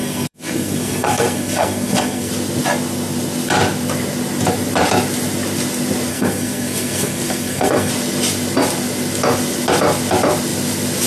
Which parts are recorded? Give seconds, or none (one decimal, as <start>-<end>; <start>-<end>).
2.3-6.1; 7.9-11.1

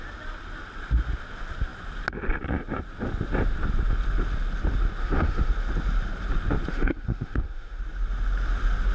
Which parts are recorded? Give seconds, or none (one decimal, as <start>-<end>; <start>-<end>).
0.0-5.0; 5.5-6.7; 7.8-8.9

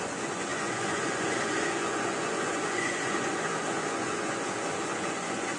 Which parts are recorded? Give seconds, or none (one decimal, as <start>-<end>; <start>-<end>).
none

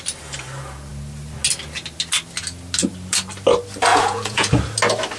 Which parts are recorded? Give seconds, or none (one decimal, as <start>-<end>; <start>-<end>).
0.0-3.9; 4.5-5.2

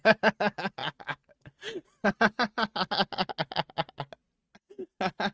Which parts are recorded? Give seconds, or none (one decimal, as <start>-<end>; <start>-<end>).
0.0-5.3